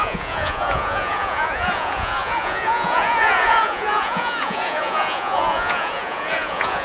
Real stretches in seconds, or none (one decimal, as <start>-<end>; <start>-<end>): none